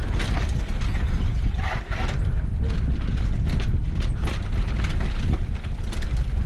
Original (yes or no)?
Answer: yes